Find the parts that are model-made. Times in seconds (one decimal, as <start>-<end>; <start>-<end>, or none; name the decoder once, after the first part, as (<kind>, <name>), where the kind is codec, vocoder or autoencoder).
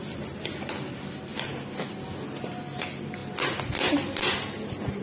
none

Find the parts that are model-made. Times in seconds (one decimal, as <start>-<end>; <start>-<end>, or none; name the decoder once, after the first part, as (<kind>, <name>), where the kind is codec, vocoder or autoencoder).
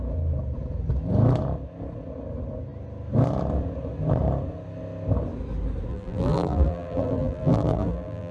5.9-8.3 (vocoder, BigVGAN v2)